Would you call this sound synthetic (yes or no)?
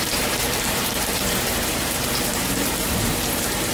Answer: yes